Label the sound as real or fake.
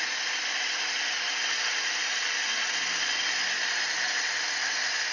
real